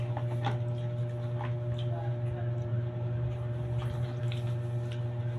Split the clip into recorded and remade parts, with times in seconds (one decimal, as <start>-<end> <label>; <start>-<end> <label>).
0.0-2.7 recorded; 2.7-4.2 remade; 4.2-5.4 recorded